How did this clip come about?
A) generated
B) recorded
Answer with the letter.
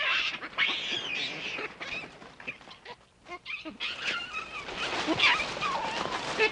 B